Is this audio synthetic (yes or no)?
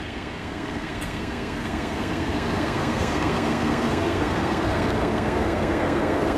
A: yes